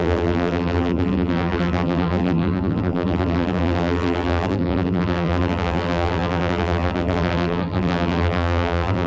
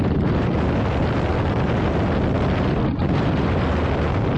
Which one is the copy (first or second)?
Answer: first